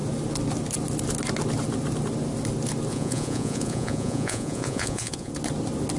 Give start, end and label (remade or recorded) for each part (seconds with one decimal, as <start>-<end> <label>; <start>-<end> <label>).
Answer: 0.0-2.9 recorded; 2.9-5.3 remade; 5.3-6.0 recorded